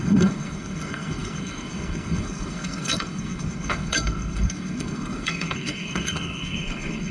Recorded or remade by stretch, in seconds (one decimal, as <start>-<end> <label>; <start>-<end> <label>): 0.0-7.1 remade